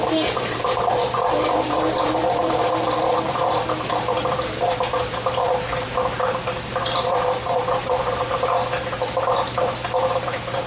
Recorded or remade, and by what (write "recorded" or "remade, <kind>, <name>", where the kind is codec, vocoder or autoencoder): remade, vocoder, BigVGAN v2